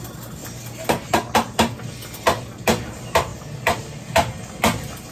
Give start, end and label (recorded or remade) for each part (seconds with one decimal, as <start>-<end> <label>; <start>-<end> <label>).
0.0-5.1 recorded